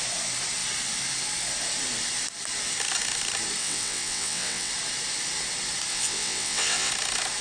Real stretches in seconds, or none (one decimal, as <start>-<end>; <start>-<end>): 0.0-3.6; 4.7-5.9; 6.9-7.4